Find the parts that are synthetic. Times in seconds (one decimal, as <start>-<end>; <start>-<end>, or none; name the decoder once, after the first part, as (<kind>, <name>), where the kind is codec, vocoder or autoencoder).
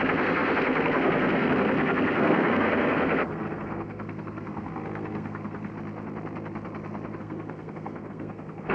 0.0-5.7 (codec, SNAC); 7.2-8.7